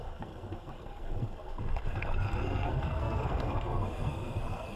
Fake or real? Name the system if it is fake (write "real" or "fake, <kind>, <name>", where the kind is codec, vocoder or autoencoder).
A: fake, codec, SNAC